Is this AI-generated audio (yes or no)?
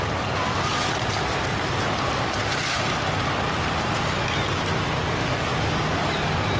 no